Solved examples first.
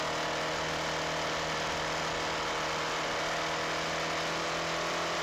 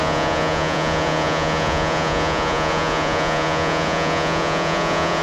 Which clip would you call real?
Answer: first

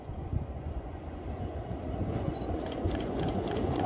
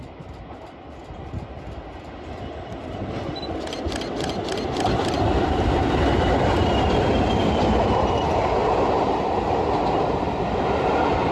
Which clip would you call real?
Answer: second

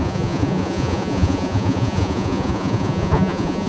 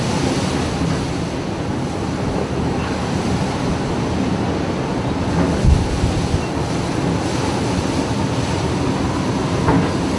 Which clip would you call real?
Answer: second